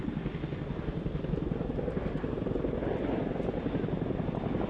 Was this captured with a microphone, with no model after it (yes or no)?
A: yes